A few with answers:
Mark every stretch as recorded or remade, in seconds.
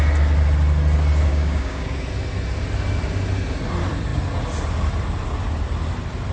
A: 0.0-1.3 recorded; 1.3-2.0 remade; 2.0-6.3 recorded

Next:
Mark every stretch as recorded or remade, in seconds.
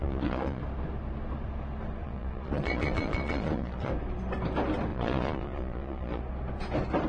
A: 0.0-0.6 remade; 0.6-2.0 recorded; 2.0-3.9 remade; 3.9-4.9 recorded; 4.9-6.2 remade; 6.2-7.1 recorded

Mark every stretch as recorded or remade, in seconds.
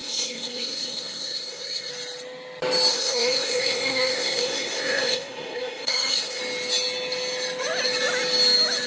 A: 0.0-1.9 remade; 1.9-2.9 recorded; 2.9-6.4 remade; 6.4-8.9 recorded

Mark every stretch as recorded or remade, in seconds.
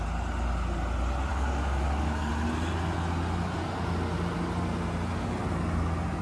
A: 0.0-1.3 recorded; 1.3-2.3 remade; 2.3-6.2 recorded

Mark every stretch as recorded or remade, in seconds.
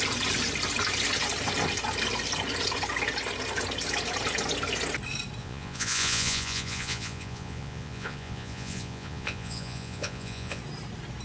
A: 0.0-5.4 recorded; 5.4-10.6 remade; 10.6-11.2 recorded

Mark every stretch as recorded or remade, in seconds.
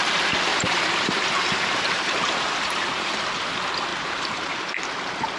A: 0.0-0.5 recorded; 0.5-3.1 remade; 3.1-3.9 recorded; 3.9-4.5 remade; 4.5-5.4 recorded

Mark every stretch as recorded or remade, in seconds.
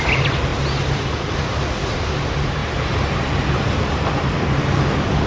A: 0.0-5.3 recorded